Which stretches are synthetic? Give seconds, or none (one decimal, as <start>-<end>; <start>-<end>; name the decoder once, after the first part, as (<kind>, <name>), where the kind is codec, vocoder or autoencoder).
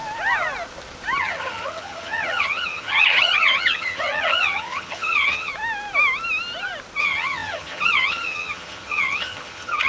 1.2-5.5 (vocoder, HiFi-GAN); 7.0-9.9